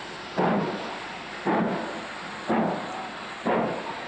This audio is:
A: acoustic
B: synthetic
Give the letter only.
A